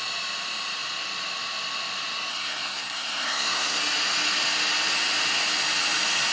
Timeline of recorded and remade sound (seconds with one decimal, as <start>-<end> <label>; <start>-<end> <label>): 0.0-2.3 recorded; 2.3-3.8 remade; 3.8-6.3 recorded